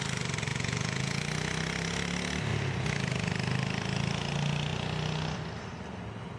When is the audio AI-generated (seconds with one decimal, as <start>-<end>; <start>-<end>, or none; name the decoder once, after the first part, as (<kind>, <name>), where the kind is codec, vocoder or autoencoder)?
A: 0.5-1.2 (vocoder, Vocos)